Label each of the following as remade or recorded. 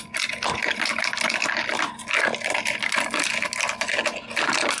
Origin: recorded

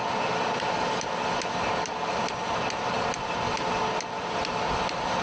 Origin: recorded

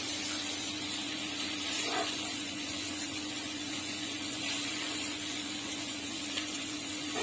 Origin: remade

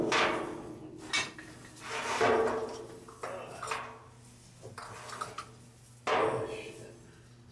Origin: recorded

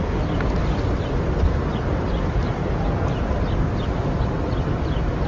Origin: recorded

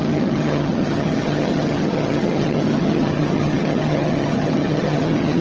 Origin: remade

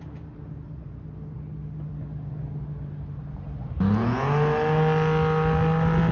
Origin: recorded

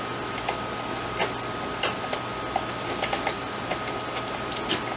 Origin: recorded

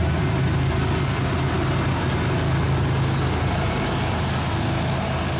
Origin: recorded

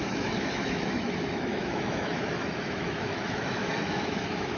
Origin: remade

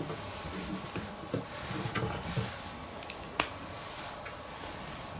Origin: recorded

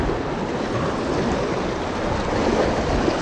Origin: recorded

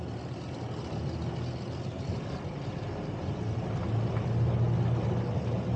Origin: recorded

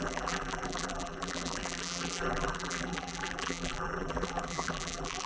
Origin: remade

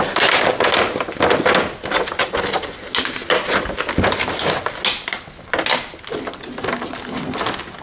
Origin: recorded